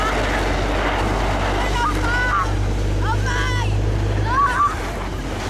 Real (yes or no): yes